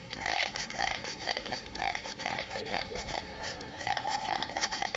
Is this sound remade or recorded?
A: remade